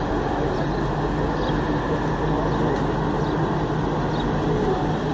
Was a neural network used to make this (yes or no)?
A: no